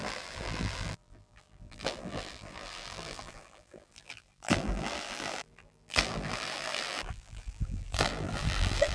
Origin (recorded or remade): remade